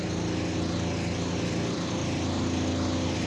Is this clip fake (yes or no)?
no